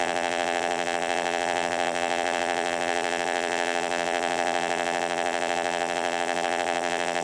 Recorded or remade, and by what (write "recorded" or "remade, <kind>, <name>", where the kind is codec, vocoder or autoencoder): remade, vocoder, BigVGAN v2